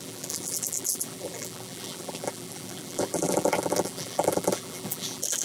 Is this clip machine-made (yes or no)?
yes